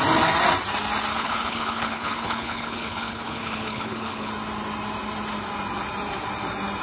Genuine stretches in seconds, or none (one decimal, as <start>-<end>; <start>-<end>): 0.0-1.1; 4.3-6.8